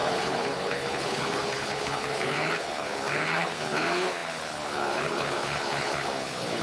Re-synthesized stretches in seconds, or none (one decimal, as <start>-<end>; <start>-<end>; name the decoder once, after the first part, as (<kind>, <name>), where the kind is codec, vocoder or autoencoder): 0.0-6.6 (codec, HILCodec)